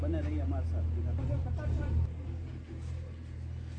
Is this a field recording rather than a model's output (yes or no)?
yes